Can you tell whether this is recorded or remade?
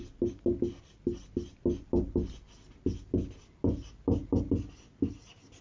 recorded